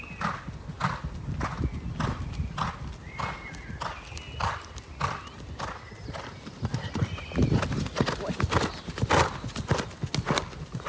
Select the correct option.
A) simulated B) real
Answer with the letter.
B